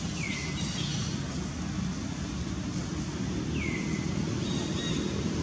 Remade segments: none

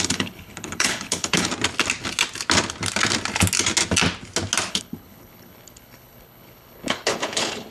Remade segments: 0.0-1.5 (codec, HILCodec); 4.7-7.7

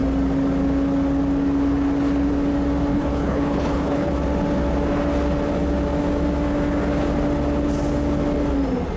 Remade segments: 2.9-4.1 (codec, HILCodec)

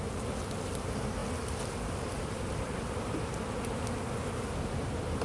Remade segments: none

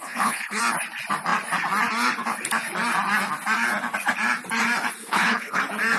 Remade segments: 0.0-0.6 (codec, HILCodec); 5.0-5.6

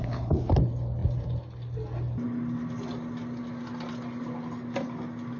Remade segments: 0.0-0.5 (codec, HILCodec)